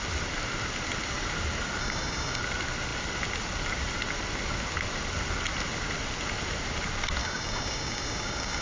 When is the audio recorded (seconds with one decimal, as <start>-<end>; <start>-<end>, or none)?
0.0-1.8; 2.4-7.2

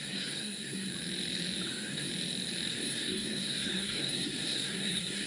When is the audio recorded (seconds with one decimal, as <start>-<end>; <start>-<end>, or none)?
0.9-1.7; 2.1-2.7

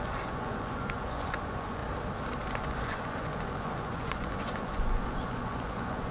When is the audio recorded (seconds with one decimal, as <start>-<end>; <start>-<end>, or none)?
1.8-2.5

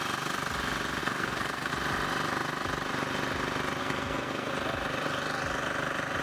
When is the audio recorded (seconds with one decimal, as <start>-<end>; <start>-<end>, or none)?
0.0-1.0; 1.7-3.8; 4.5-6.2

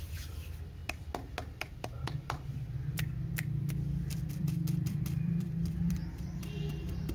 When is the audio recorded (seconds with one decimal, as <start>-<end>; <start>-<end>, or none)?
0.8-4.3